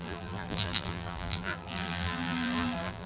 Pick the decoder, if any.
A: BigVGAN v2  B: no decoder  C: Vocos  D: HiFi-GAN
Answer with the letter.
A